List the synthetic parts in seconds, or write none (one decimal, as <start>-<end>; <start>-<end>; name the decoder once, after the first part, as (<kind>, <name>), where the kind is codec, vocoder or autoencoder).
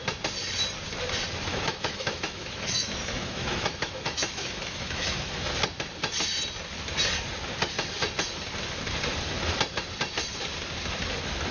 1.5-5.5 (autoencoder, DAC-VAE)